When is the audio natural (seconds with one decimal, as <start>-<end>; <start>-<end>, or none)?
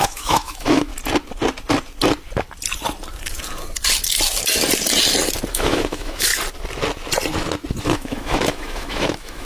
0.9-5.5; 6.3-7.8